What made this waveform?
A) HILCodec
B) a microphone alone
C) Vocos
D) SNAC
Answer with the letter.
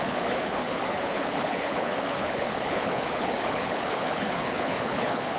A